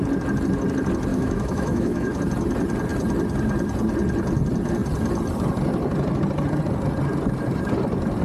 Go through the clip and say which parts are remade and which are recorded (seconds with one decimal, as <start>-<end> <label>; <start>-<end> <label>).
0.0-1.1 recorded; 1.1-2.2 remade; 2.2-8.2 recorded